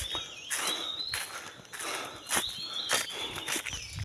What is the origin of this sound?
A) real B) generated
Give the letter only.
A